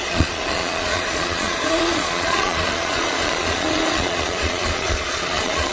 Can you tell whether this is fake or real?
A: fake